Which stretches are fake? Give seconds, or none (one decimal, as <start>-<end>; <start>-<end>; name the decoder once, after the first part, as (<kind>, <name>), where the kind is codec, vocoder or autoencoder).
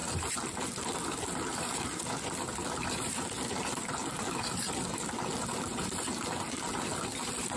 none